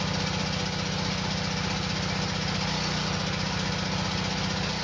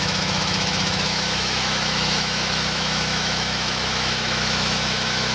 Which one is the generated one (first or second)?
second